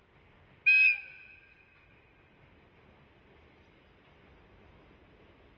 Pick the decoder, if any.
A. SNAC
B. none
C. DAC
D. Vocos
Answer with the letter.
B